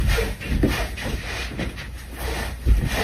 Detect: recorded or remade recorded